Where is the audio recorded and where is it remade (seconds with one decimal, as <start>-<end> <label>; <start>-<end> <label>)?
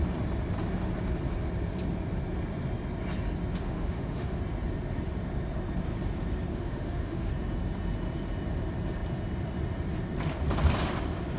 0.0-3.5 recorded; 3.5-4.4 remade; 4.4-6.5 recorded; 6.5-7.3 remade; 7.3-11.4 recorded